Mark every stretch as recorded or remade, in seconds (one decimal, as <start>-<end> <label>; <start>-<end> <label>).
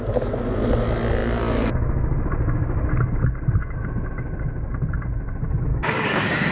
0.0-5.7 recorded; 5.7-6.5 remade